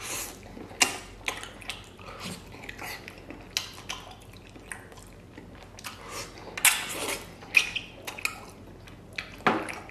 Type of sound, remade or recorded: recorded